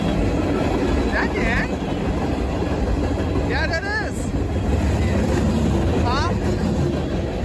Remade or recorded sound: recorded